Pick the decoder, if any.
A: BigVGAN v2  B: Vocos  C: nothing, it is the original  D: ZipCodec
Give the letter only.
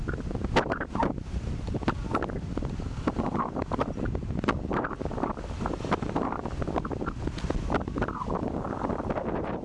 C